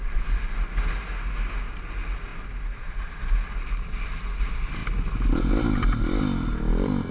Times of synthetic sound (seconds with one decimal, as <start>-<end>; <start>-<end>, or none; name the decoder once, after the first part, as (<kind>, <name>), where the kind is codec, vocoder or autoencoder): none